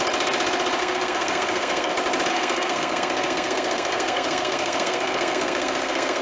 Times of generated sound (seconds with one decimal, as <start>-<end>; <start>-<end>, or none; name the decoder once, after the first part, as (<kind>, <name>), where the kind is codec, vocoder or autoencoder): 0.8-1.9 (codec, SNAC); 2.3-6.2